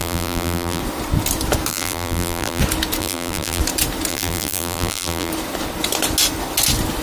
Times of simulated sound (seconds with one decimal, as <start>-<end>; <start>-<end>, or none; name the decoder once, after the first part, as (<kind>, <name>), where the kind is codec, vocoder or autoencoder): 0.0-0.8 (vocoder, BigVGAN v2); 1.7-2.6; 3.0-3.6; 4.1-5.3